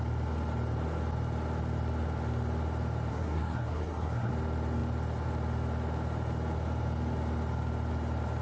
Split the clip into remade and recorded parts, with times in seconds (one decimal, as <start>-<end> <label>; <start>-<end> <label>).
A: 0.0-3.1 recorded; 3.1-4.3 remade; 4.3-8.4 recorded